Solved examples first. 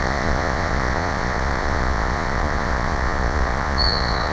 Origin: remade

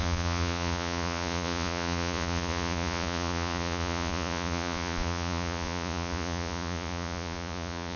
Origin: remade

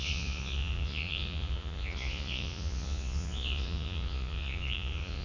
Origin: remade